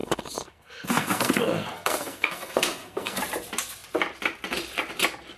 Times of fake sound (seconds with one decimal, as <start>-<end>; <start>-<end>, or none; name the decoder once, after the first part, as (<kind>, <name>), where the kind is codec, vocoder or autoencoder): 0.0-3.2 (codec, SNAC)